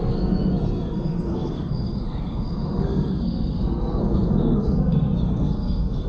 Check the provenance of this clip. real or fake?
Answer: fake